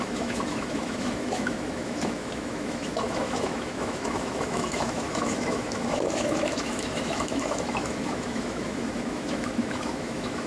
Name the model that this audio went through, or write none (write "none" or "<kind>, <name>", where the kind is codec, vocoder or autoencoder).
autoencoder, DAC-VAE